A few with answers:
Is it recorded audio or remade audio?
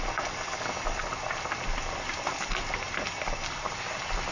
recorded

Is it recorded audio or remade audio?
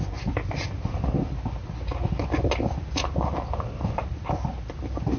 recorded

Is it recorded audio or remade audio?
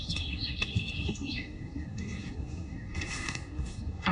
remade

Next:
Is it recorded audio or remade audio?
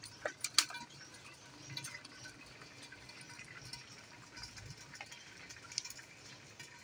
recorded